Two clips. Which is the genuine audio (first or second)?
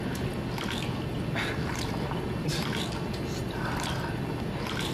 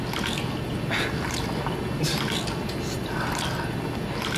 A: second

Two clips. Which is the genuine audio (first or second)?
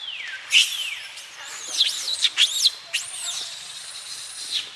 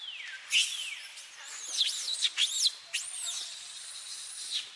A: second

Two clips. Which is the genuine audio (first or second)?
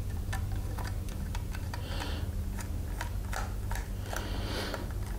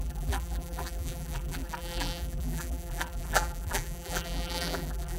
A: first